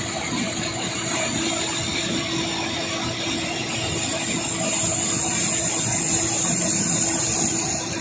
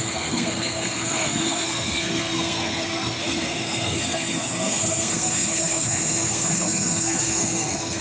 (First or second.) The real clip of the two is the first